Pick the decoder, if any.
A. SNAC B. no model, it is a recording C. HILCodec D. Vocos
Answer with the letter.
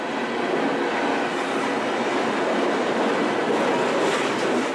B